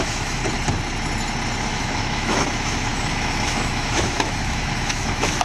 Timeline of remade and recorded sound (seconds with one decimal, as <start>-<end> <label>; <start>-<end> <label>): 0.0-0.4 remade; 0.4-1.7 recorded; 1.7-5.4 remade